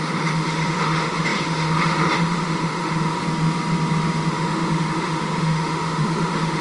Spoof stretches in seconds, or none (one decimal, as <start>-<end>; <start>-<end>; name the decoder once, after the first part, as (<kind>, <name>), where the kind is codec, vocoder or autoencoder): 0.0-3.2 (autoencoder, DAC-VAE); 4.3-6.6